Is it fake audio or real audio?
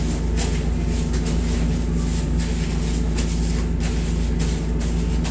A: real